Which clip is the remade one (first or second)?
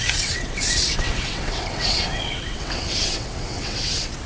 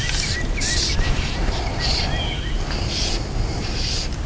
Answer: first